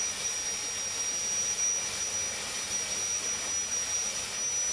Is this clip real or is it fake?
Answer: real